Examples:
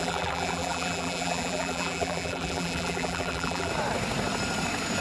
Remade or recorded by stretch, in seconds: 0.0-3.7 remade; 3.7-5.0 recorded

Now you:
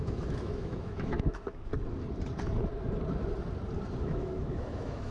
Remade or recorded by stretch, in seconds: 0.0-1.7 remade; 1.7-4.0 recorded; 4.0-5.1 remade